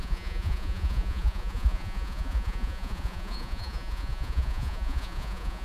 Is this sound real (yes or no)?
no